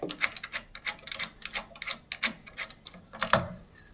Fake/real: real